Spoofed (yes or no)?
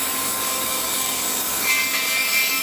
yes